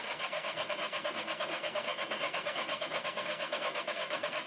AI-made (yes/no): yes